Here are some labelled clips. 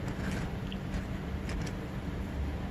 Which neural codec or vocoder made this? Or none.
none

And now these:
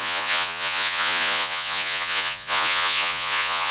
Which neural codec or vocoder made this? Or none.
vocoder, Vocos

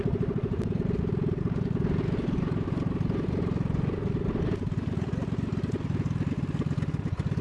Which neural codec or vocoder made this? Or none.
none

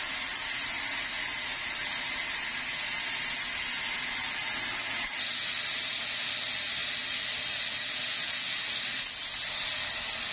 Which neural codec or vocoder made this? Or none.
none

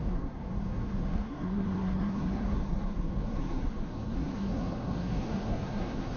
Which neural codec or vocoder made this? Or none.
codec, SNAC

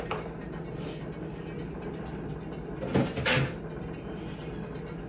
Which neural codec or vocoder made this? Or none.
none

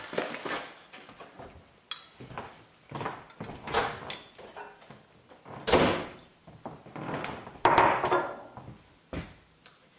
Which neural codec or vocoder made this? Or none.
none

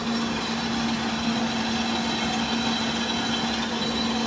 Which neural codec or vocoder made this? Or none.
none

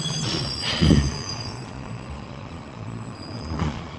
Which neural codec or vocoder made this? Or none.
vocoder, Vocos